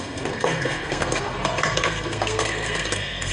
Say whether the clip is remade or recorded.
remade